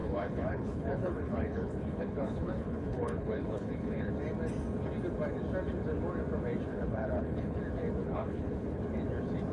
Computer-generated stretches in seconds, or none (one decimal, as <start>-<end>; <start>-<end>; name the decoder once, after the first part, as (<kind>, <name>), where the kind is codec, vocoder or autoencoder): 0.0-4.1 (codec, HILCodec); 6.7-7.6; 8.0-8.8